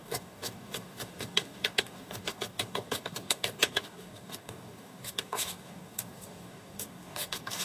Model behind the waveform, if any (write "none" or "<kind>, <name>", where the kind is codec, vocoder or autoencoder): codec, DAC